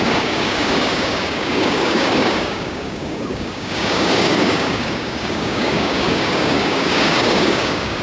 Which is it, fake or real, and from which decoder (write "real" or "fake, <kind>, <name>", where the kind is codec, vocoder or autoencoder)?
fake, codec, DAC